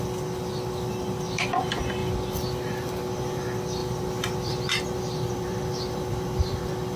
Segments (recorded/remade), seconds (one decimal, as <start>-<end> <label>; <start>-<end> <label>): 0.0-3.8 recorded; 3.8-6.6 remade; 6.6-7.0 recorded